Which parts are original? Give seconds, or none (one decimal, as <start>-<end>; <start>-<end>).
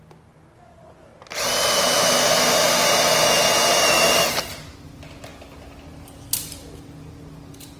0.0-7.8